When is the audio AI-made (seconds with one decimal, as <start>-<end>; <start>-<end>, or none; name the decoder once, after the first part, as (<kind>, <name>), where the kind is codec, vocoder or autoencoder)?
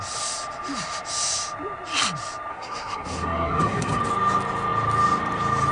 2.5-4.0 (codec, SNAC)